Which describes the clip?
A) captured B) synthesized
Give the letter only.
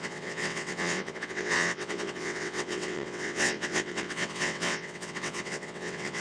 B